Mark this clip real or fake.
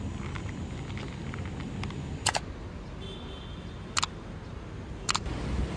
real